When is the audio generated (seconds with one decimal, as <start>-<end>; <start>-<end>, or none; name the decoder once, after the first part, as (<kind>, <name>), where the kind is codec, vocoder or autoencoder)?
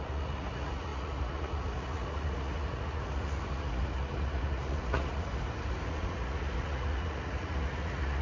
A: 0.0-5.3 (vocoder, Vocos); 5.9-8.2